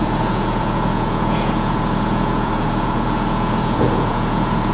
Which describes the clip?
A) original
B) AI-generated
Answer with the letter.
B